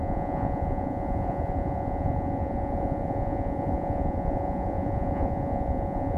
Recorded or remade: remade